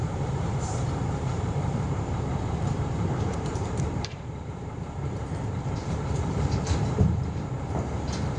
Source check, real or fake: fake